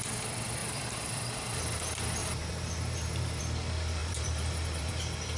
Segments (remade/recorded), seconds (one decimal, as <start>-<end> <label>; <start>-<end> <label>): 0.0-0.6 recorded; 0.6-1.6 remade; 1.6-2.2 recorded; 2.2-3.4 remade; 3.4-4.0 recorded; 4.0-4.9 remade; 4.9-5.4 recorded